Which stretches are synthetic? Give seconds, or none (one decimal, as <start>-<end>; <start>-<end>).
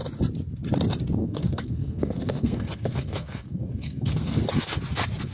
1.2-4.4